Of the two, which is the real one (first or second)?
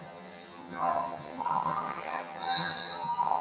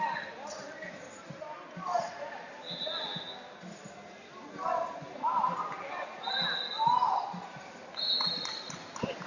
second